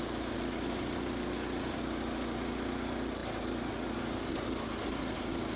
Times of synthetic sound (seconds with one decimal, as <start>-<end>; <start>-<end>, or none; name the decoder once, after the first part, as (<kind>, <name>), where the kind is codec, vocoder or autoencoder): none